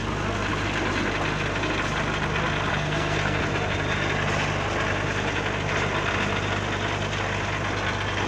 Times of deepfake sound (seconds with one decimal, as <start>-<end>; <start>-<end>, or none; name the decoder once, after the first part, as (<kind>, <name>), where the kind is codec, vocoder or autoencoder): 2.7-3.4 (codec, SNAC)